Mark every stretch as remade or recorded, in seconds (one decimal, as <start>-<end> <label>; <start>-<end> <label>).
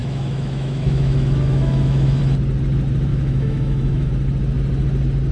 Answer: 0.0-2.2 remade; 2.2-3.1 recorded; 3.1-4.1 remade; 4.1-5.3 recorded